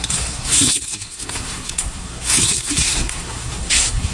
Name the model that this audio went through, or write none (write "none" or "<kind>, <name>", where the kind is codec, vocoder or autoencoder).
codec, SNAC